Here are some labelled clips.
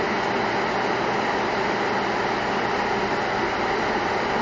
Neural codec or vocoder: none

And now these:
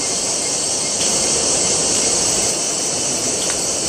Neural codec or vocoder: vocoder, BigVGAN v2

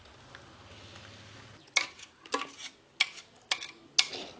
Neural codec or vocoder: none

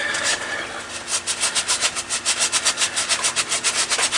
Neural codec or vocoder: none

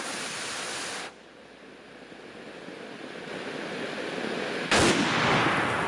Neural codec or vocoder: none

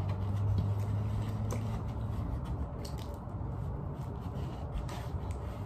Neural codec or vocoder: none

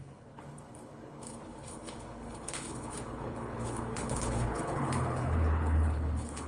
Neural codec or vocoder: codec, HILCodec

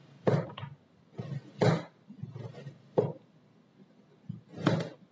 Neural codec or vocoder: none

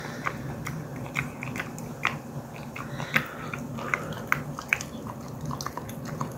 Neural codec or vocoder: none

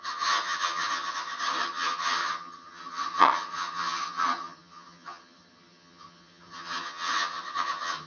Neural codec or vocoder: vocoder, HiFi-GAN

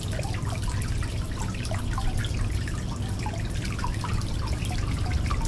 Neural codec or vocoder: none